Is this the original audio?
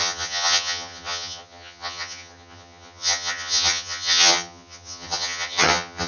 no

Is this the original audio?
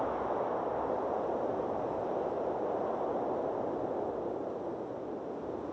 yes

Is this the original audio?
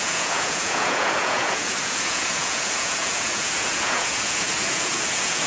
no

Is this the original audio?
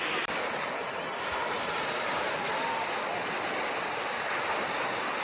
yes